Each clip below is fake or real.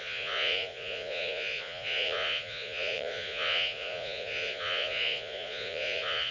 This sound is fake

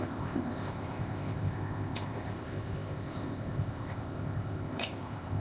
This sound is fake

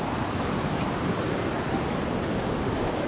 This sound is real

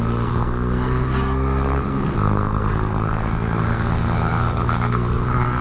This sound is fake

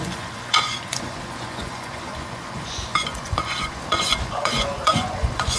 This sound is fake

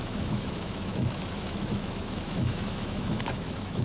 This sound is fake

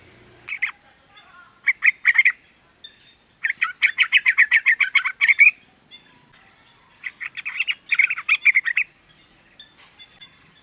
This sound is real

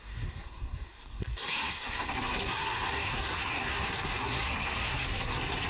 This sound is fake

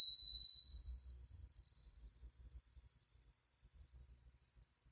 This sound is fake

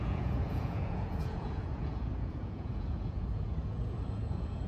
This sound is fake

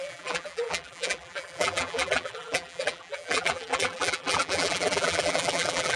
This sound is fake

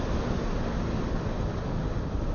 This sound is real